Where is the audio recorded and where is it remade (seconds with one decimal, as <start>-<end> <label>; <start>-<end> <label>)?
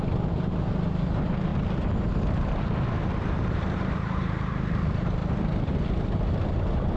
0.0-5.2 remade; 5.2-6.0 recorded; 6.0-7.0 remade